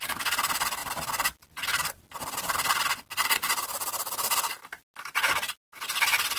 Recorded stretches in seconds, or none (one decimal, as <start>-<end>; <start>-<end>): 0.0-6.4